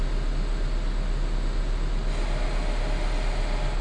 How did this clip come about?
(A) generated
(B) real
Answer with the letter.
B